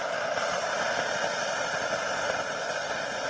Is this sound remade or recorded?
recorded